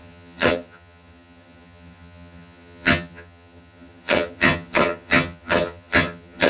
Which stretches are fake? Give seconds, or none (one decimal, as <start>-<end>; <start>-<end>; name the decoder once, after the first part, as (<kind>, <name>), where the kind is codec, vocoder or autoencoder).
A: 0.0-6.5 (vocoder, HiFi-GAN)